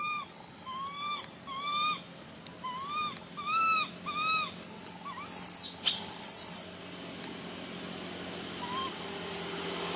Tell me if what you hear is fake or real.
real